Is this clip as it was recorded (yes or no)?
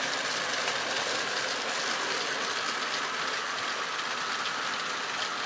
yes